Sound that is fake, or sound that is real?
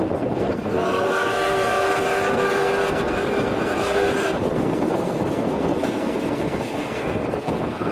fake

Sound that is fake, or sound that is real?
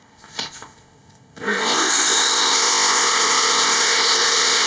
fake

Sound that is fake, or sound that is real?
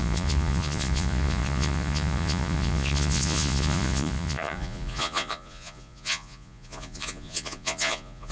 fake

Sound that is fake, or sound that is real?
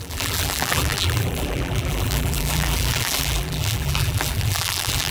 fake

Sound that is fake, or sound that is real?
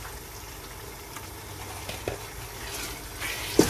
real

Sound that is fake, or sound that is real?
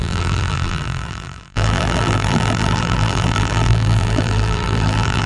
fake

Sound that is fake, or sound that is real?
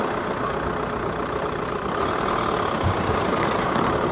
real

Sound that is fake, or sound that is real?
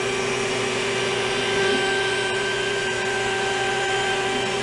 fake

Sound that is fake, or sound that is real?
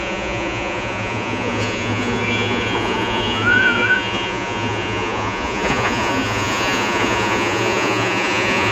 fake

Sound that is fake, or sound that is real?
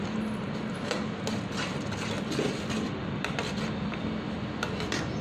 real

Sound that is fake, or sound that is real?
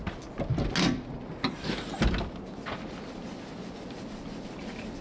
real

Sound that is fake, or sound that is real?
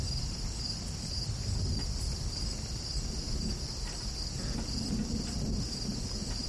real